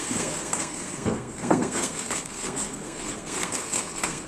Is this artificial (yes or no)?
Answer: yes